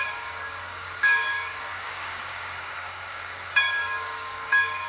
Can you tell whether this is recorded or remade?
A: remade